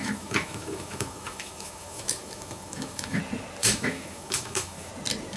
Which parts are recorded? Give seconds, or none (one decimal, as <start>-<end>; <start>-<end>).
3.2-3.6; 4.9-5.4